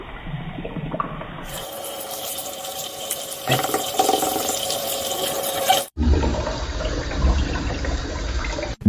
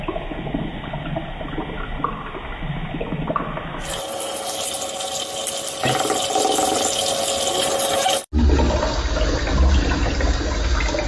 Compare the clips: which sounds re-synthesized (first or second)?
first